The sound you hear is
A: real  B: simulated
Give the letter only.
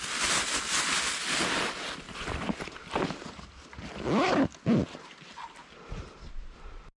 A